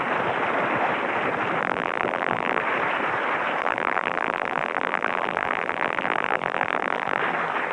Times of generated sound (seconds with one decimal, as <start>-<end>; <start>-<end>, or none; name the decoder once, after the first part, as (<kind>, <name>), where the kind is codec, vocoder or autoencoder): 1.6-2.6 (vocoder, BigVGAN v2); 3.6-7.2